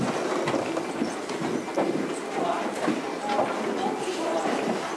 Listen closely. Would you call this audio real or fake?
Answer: real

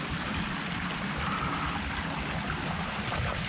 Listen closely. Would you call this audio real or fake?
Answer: real